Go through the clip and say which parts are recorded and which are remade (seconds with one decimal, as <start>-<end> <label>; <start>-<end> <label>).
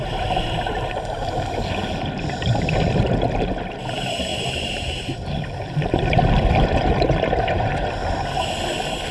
0.0-4.3 recorded; 4.3-7.9 remade; 7.9-9.1 recorded